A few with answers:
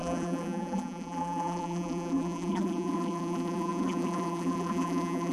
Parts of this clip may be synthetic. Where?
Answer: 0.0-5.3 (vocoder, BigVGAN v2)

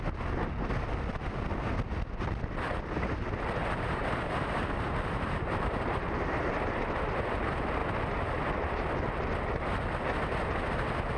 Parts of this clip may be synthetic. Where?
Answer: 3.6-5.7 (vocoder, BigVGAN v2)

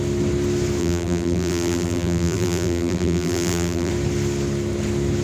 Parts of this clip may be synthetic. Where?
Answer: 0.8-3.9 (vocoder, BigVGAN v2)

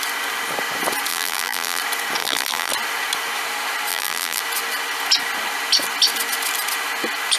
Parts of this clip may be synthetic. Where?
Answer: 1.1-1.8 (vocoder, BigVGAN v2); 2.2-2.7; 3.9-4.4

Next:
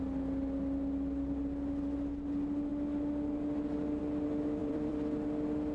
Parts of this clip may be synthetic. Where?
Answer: 4.6-5.1 (vocoder, BigVGAN v2)